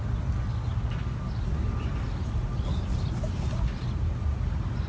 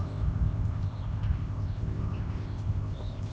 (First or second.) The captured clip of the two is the first